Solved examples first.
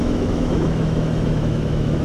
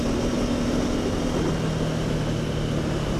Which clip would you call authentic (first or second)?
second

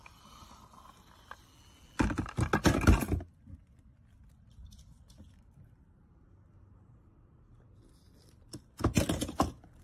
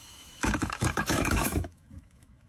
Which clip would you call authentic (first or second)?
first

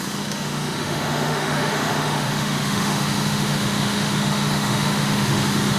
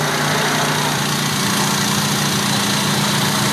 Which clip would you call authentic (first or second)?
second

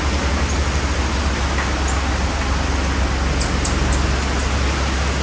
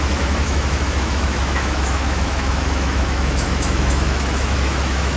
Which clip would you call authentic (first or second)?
first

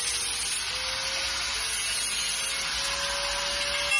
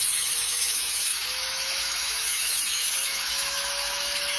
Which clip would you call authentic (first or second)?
first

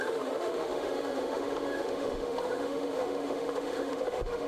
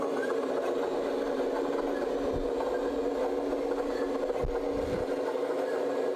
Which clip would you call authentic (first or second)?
second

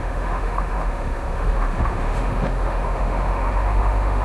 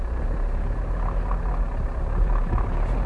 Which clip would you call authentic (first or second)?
second